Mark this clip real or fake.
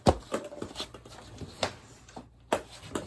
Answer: real